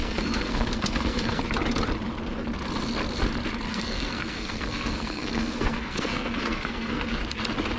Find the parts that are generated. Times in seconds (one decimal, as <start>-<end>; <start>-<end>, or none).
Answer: 0.0-1.4; 3.7-7.0